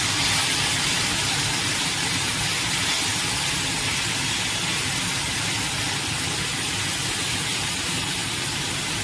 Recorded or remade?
recorded